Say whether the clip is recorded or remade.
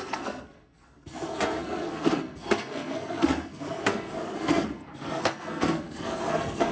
remade